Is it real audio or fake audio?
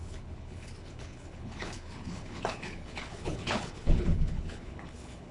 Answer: fake